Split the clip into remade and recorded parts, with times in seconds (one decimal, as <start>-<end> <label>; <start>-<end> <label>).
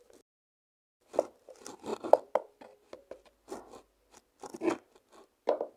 0.0-5.8 recorded